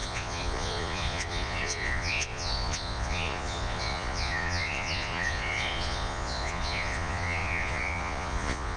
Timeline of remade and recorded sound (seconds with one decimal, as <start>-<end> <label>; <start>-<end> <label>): 0.0-8.8 remade